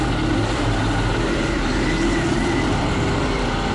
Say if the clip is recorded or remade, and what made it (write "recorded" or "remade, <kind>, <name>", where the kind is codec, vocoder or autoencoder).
remade, vocoder, BigVGAN v2